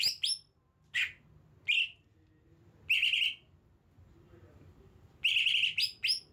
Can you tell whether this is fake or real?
real